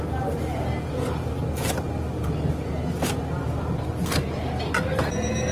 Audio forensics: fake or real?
real